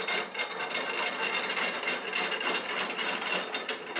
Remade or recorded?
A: recorded